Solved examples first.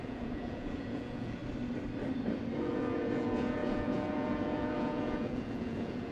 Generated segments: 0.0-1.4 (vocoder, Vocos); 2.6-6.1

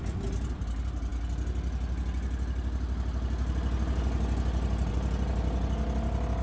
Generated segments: none

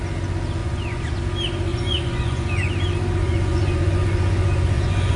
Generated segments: 0.6-1.2 (vocoder, Vocos); 1.7-2.7; 3.2-5.2

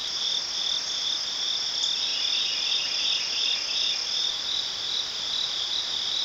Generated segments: none

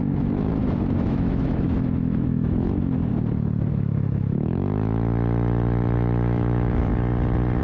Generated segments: 0.0-3.1 (autoencoder, DAC-VAE); 3.7-6.9

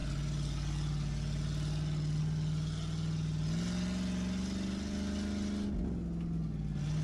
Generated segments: none